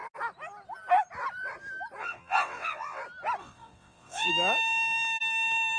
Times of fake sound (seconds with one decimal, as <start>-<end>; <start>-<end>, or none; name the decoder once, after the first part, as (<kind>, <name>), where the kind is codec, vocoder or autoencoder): 2.0-3.0 (vocoder, WaveNeXt); 3.4-4.3